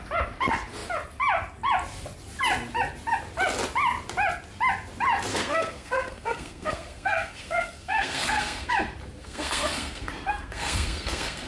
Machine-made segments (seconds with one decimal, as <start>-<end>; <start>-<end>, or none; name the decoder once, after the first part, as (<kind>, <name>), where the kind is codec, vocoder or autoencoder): 5.3-8.7 (codec, SNAC); 9.2-11.5